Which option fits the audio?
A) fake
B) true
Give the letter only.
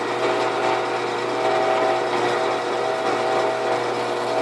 B